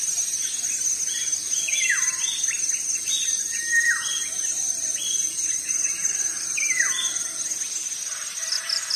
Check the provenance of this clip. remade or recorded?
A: remade